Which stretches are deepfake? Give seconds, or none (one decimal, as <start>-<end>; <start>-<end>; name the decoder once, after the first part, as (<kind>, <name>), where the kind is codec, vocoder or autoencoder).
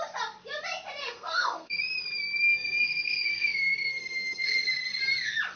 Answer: 1.0-1.8 (codec, SNAC); 2.5-5.0